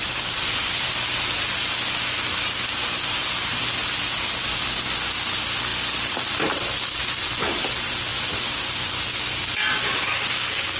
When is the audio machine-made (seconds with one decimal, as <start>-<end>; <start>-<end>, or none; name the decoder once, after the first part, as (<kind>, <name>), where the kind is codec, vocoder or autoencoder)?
none